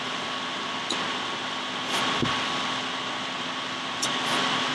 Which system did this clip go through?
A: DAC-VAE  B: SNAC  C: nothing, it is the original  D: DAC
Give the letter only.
C